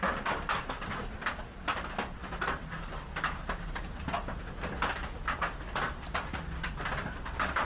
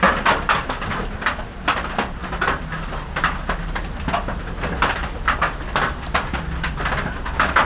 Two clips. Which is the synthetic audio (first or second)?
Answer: first